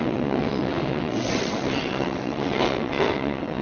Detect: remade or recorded remade